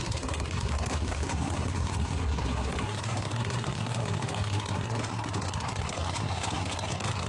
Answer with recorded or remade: remade